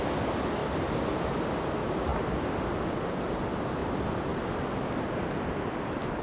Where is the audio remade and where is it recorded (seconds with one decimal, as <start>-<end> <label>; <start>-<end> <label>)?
0.0-6.2 recorded